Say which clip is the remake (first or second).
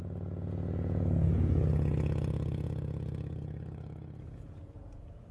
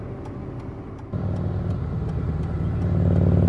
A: first